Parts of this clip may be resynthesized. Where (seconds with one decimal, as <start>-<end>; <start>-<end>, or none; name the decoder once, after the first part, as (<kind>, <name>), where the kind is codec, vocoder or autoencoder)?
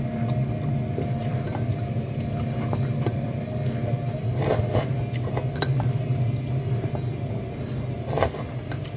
1.2-4.3 (vocoder, BigVGAN v2)